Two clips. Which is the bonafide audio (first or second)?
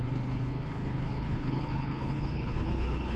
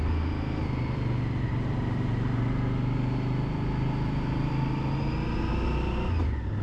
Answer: second